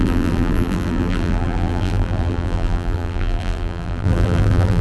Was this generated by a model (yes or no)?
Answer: yes